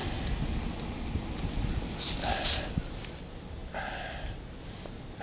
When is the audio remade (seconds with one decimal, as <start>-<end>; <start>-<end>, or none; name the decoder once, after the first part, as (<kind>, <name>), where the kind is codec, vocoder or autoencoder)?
none